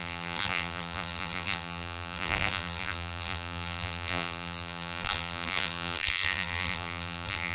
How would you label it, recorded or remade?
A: remade